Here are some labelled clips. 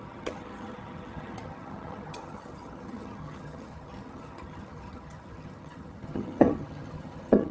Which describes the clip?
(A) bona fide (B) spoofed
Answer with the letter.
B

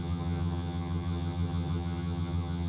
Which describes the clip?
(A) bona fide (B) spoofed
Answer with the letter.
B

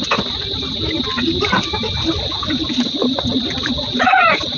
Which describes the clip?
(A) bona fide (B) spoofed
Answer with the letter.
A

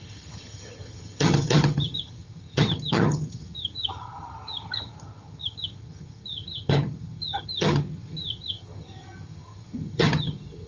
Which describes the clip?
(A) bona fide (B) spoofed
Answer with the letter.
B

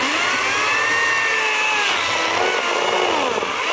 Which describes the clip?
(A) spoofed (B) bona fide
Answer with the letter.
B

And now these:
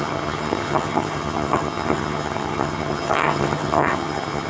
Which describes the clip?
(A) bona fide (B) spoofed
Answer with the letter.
B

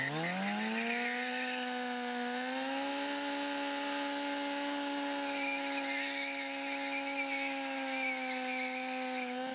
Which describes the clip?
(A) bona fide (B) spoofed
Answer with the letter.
A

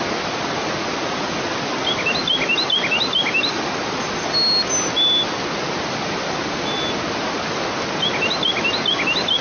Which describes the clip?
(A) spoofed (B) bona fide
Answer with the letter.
B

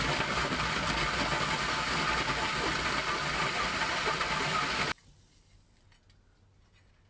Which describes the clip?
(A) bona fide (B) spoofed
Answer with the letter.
A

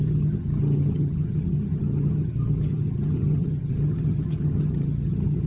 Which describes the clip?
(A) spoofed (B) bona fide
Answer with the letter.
A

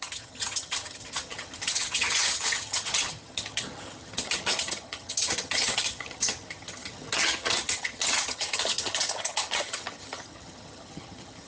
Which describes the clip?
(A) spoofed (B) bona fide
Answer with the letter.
A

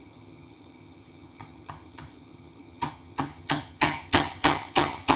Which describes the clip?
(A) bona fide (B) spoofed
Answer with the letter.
B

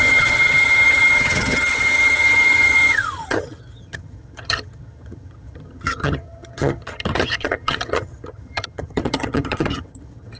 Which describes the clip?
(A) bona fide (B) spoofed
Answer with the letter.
B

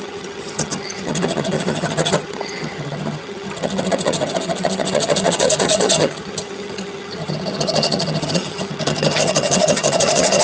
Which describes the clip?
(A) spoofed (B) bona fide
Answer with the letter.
A